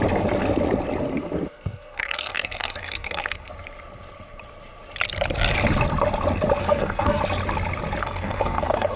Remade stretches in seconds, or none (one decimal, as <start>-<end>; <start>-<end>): 1.5-3.5; 6.6-7.2; 8.0-9.0

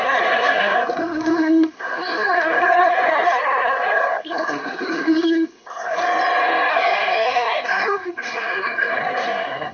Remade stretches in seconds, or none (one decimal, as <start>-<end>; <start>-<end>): 0.0-6.0; 6.7-9.7

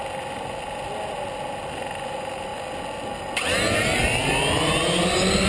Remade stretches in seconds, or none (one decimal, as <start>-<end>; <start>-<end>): none